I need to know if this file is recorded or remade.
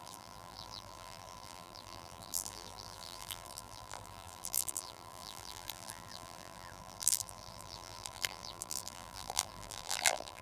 remade